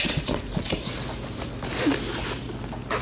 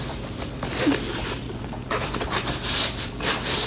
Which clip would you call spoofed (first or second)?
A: second